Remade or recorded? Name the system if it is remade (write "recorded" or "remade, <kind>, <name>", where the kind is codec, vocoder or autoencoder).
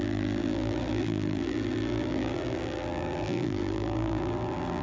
remade, vocoder, BigVGAN v2